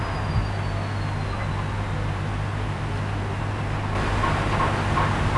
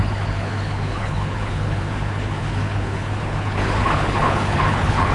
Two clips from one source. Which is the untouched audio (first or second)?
first